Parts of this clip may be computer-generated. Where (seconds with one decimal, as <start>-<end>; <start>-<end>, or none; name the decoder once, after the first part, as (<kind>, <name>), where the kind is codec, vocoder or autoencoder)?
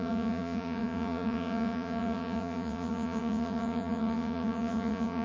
0.0-5.2 (vocoder, Vocos)